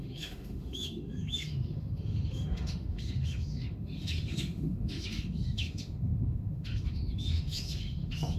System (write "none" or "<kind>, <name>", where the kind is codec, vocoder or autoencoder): autoencoder, DAC-VAE